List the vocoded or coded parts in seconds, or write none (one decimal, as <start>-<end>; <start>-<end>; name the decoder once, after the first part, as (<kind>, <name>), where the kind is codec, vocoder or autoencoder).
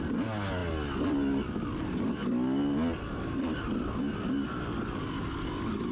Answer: none